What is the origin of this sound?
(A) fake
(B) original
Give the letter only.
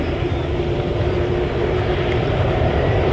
B